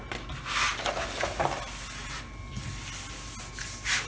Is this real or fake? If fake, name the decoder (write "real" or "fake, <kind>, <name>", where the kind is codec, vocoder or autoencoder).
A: real